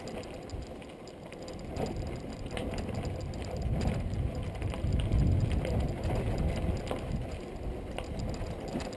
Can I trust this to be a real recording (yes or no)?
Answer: yes